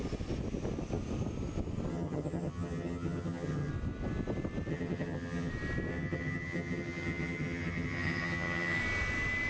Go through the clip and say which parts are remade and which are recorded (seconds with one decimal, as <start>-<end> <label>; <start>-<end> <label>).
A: 0.0-1.9 recorded; 1.9-3.7 remade; 3.7-4.7 recorded; 4.7-5.5 remade; 5.5-5.9 recorded; 5.9-8.8 remade; 8.8-9.5 recorded